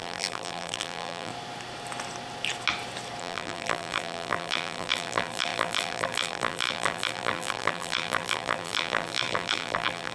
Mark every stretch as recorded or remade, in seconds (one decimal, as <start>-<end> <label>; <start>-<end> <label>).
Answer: 0.0-1.3 remade; 1.3-3.2 recorded; 3.2-10.1 remade